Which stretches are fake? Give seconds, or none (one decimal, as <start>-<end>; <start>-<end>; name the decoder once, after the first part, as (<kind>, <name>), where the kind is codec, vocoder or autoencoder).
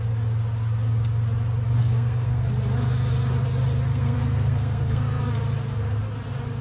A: 1.8-2.5 (codec, SNAC); 3.9-5.2